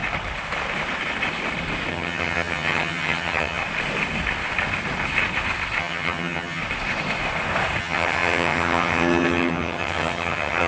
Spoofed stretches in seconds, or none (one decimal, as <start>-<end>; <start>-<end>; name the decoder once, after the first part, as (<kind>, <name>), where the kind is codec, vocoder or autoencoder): 1.9-3.6 (vocoder, HiFi-GAN); 5.8-6.6; 7.8-10.7